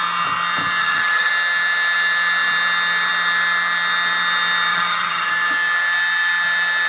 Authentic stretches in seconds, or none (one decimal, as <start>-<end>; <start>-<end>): 0.0-0.8; 1.3-4.7; 5.3-6.9